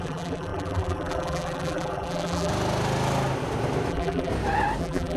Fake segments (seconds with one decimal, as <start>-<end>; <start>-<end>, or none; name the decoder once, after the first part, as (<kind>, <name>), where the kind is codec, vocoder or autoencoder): 0.0-2.5 (vocoder, BigVGAN v2); 3.9-4.3; 4.8-5.2

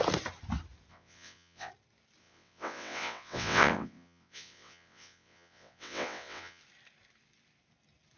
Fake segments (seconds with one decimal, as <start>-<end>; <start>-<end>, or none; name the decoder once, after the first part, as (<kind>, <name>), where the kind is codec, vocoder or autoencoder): 0.9-1.7 (vocoder, WaveNeXt); 2.2-6.6

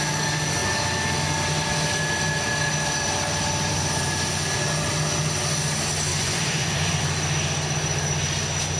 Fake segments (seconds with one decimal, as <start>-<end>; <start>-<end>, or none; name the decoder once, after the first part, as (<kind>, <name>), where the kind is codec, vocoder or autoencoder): 6.1-7.0 (vocoder, Vocos)

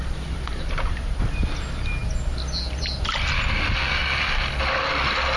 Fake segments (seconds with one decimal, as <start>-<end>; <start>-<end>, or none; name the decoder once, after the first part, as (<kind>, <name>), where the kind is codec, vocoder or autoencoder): 0.5-1.2 (vocoder, BigVGAN v2)

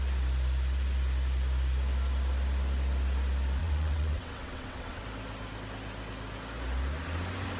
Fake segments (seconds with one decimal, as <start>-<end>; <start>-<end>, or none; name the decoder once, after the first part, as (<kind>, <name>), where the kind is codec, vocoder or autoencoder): 3.6-5.0 (vocoder, WaveNeXt)

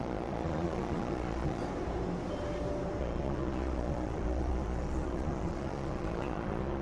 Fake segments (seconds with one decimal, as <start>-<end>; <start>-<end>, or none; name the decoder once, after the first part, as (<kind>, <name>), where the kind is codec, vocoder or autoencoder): 0.0-1.6 (vocoder, Vocos); 3.0-6.8

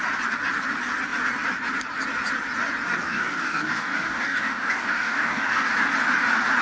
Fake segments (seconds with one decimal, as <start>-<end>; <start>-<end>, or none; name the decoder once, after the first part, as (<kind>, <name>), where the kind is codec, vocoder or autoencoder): 3.0-5.7 (codec, DAC)

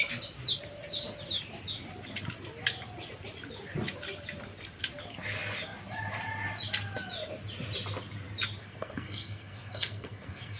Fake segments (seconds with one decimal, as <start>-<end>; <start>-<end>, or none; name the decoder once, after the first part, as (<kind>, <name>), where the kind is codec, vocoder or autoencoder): 8.6-10.6 (codec, SNAC)